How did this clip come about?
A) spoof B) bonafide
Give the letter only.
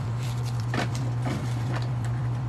A